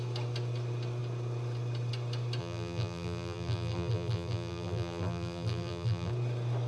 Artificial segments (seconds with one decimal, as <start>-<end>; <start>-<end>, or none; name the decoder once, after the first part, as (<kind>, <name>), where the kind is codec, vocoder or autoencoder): 2.4-6.1 (vocoder, BigVGAN v2)